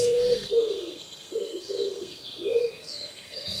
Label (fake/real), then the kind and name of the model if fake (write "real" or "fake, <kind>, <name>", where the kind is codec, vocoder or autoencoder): fake, codec, SNAC